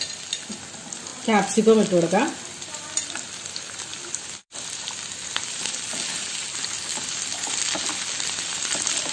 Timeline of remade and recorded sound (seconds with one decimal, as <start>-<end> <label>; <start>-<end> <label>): 0.0-3.9 recorded; 3.9-5.8 remade; 5.8-6.9 recorded; 6.9-7.9 remade; 7.9-9.1 recorded